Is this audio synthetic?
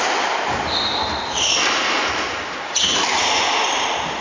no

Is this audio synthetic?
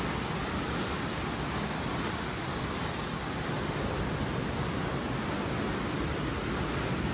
no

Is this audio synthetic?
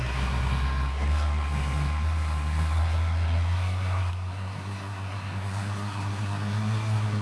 yes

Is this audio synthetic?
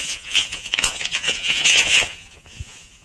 yes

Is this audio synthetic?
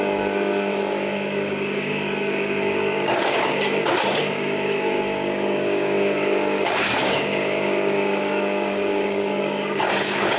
yes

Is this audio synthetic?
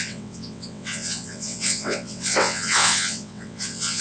yes